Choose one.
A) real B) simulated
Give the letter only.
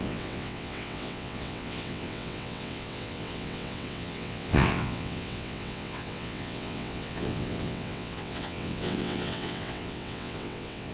B